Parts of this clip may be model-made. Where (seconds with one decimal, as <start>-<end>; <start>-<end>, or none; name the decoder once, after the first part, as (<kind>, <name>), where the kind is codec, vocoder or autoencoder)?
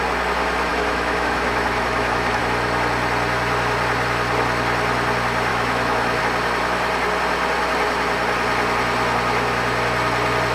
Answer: 0.7-2.4 (autoencoder, DAC-VAE); 5.5-6.2